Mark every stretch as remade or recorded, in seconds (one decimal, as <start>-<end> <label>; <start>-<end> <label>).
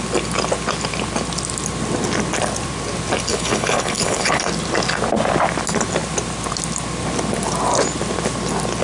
0.0-3.3 recorded; 3.3-4.4 remade; 4.4-8.8 recorded